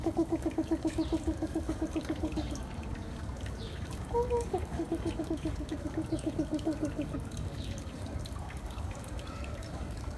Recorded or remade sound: remade